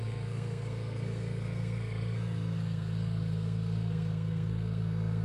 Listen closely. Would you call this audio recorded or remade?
remade